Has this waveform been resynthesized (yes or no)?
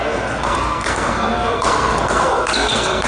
yes